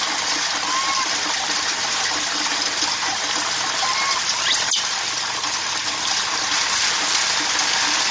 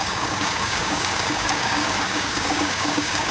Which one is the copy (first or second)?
second